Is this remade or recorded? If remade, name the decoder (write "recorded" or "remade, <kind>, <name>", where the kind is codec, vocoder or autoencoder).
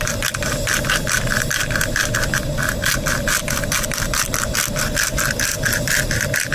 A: recorded